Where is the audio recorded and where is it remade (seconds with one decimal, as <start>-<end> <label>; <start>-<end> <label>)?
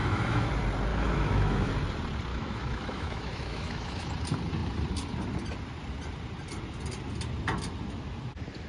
0.0-0.5 remade; 0.5-0.9 recorded; 0.9-1.7 remade; 1.7-2.3 recorded; 2.3-4.1 remade; 4.1-8.7 recorded